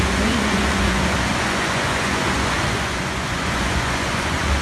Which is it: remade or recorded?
remade